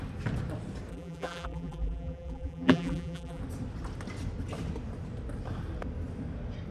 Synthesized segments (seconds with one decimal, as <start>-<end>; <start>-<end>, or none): 0.9-3.4